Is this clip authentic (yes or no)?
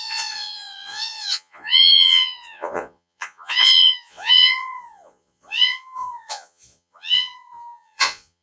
no